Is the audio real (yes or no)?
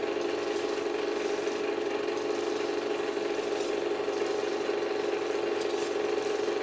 yes